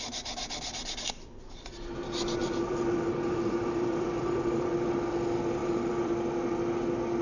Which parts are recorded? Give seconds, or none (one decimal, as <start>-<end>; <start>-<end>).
0.0-2.4; 4.9-5.6; 6.1-7.2